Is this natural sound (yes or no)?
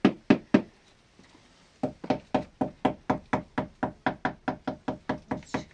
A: yes